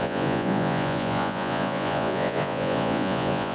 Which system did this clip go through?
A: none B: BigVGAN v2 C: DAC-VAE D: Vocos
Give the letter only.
D